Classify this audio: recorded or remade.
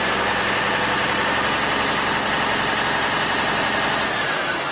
recorded